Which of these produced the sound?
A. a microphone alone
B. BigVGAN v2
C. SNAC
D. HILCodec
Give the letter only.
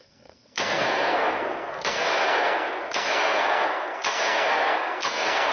C